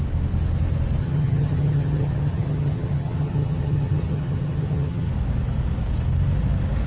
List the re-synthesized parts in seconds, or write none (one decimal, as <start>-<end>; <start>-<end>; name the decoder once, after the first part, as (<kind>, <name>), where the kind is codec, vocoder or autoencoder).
1.0-5.1 (vocoder, HiFi-GAN)